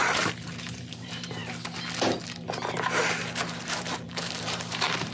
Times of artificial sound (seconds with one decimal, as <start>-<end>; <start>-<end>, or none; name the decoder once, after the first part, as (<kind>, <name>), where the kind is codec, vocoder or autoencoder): 0.0-1.4 (vocoder, BigVGAN v2); 3.6-5.1